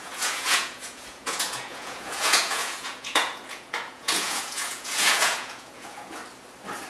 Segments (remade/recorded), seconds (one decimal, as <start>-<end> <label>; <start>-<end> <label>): 0.0-6.2 remade; 6.2-6.9 recorded